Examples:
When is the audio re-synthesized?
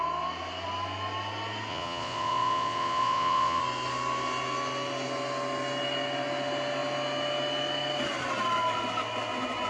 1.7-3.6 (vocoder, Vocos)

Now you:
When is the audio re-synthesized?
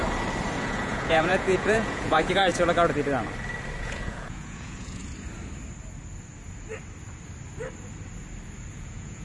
0.5-2.5 (vocoder, Vocos); 3.8-5.0; 8.7-9.2